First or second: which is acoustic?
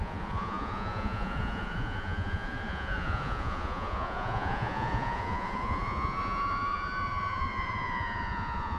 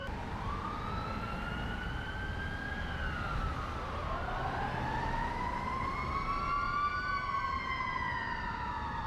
second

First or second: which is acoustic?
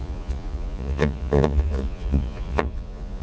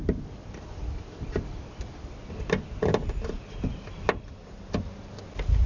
second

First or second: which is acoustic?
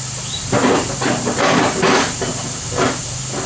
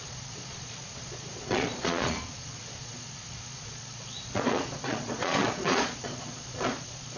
first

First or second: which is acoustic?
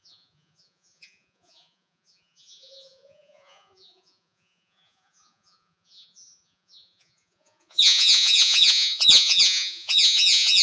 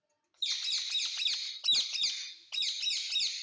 second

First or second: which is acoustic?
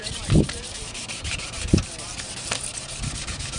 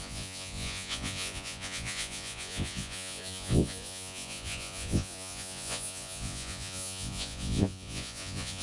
first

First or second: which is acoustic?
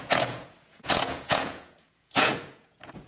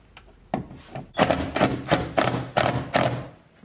second